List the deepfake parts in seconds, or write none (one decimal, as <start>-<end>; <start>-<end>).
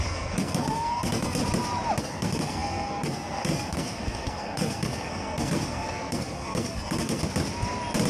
0.0-1.4; 2.0-7.2